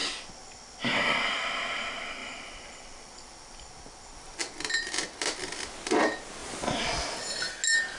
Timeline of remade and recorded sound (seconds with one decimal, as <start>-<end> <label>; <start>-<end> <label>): 0.0-2.2 recorded; 2.2-4.4 remade; 4.4-6.4 recorded; 6.4-7.2 remade; 7.2-8.0 recorded